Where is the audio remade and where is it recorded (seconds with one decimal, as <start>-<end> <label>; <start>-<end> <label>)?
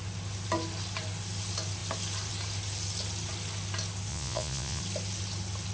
0.0-4.1 recorded; 4.1-4.8 remade; 4.8-5.7 recorded